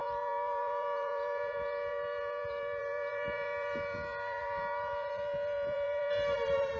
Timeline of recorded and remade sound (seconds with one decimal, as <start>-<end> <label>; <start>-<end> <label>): 0.0-6.8 remade